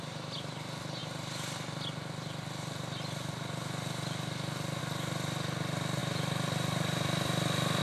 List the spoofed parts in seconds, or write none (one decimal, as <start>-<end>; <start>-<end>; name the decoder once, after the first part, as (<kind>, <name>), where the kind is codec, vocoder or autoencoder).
6.0-7.8 (vocoder, BigVGAN v2)